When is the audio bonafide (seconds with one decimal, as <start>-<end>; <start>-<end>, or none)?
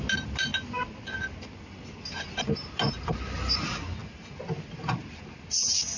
0.0-6.0